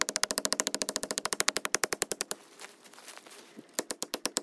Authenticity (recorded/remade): recorded